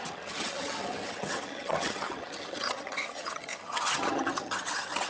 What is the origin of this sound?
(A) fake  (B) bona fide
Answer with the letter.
A